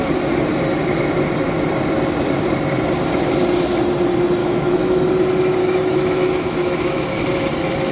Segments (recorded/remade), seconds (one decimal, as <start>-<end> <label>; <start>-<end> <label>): 0.0-4.4 recorded; 4.4-5.1 remade; 5.1-5.6 recorded; 5.6-7.0 remade; 7.0-7.9 recorded